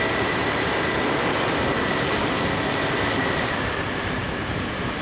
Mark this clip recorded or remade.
recorded